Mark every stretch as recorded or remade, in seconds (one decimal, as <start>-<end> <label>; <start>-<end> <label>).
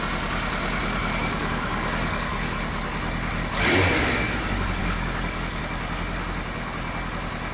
0.0-1.2 recorded; 1.2-2.3 remade; 2.3-4.8 recorded; 4.8-5.6 remade; 5.6-7.5 recorded